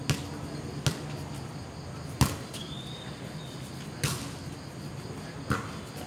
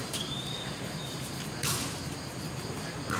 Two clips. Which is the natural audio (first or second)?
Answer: first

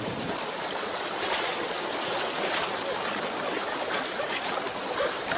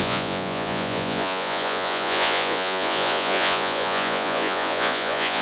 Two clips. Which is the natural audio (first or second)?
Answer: first